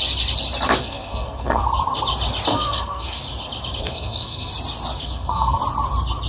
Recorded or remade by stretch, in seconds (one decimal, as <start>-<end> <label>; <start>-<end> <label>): 0.0-0.8 recorded; 0.8-1.6 remade; 1.6-2.5 recorded; 2.5-3.2 remade; 3.2-3.9 recorded; 3.9-4.5 remade; 4.5-5.0 recorded; 5.0-5.6 remade; 5.6-6.3 recorded